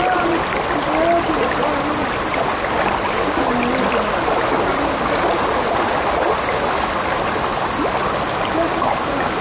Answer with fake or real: real